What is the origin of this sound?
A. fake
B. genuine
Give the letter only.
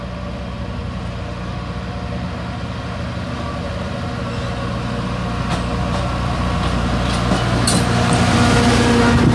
B